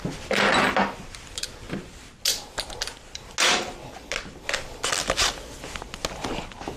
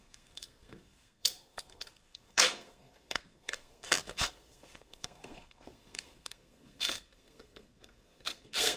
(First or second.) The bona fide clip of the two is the first